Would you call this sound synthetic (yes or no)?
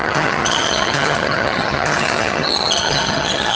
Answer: yes